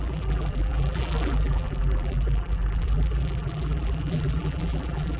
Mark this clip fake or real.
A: fake